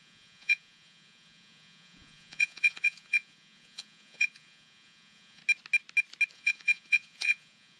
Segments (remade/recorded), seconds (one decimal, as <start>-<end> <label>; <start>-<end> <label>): 0.0-5.4 remade; 5.4-6.3 recorded; 6.3-7.8 remade